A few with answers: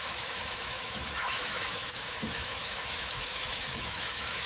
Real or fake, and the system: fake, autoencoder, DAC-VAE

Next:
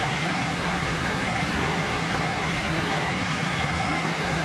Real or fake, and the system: fake, codec, SNAC